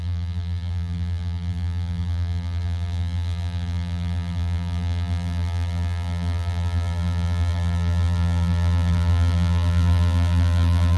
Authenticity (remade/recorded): remade